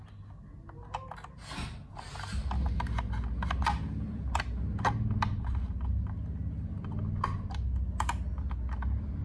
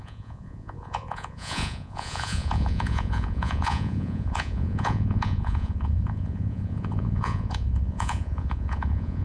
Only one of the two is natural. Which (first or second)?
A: first